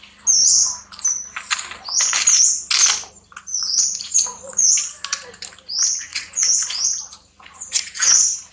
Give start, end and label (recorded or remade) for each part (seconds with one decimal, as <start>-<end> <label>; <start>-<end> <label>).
0.0-3.5 recorded; 3.5-4.7 remade; 4.7-6.1 recorded; 6.1-8.5 remade